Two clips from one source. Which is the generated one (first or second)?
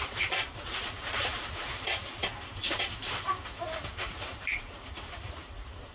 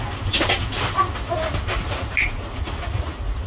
first